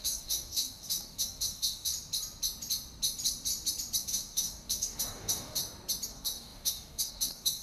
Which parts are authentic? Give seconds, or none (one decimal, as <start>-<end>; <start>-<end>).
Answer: 1.9-4.0; 5.6-6.1